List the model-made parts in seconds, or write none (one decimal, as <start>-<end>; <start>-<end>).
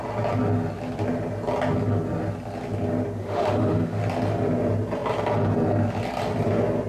3.2-4.0